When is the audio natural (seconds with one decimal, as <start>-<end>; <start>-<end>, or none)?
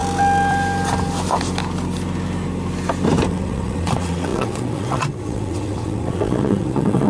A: 0.0-3.3